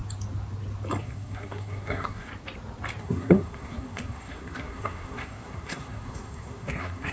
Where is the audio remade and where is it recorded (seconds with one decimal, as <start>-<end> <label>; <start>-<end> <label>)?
0.0-1.0 recorded; 1.0-2.3 remade; 2.3-3.0 recorded; 3.0-7.1 remade